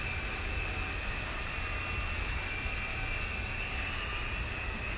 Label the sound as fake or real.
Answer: real